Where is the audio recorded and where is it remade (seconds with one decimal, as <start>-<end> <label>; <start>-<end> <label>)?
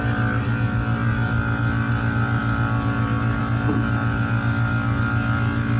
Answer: 0.0-5.8 recorded